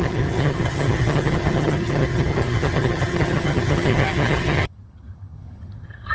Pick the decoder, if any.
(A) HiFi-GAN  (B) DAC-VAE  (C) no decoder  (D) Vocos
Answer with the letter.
A